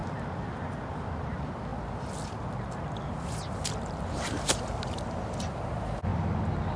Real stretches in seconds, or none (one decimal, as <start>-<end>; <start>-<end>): 0.0-6.8

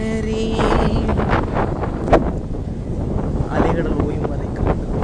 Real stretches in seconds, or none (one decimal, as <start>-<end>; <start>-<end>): 0.0-5.0

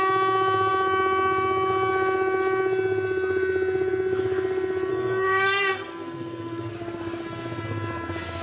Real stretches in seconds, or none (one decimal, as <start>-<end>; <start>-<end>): 0.0-4.9; 6.7-8.4

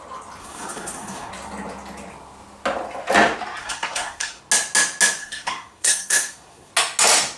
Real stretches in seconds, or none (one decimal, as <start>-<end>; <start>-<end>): 0.0-0.4; 1.3-3.6; 4.4-5.2; 6.7-7.4